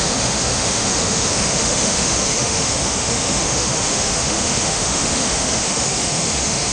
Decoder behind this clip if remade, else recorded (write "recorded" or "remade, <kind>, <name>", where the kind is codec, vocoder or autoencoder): remade, autoencoder, DAC-VAE